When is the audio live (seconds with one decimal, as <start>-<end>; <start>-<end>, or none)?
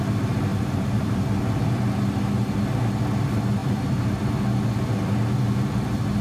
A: 0.0-0.5; 1.2-3.6; 4.2-6.2